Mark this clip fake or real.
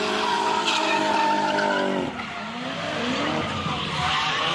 real